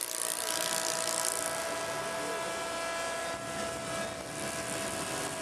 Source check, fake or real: real